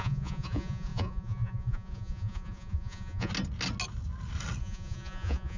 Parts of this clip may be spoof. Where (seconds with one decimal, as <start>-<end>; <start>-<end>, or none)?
0.0-3.3; 4.6-5.6